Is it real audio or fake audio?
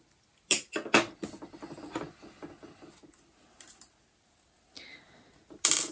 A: real